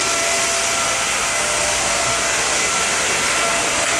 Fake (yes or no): no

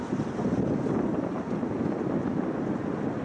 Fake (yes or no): no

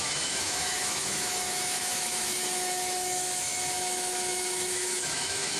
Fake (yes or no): yes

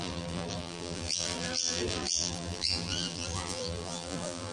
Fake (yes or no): yes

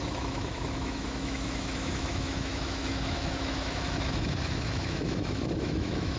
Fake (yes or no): yes